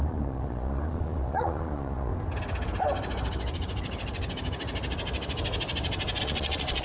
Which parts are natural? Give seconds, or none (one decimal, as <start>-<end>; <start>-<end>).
2.1-6.2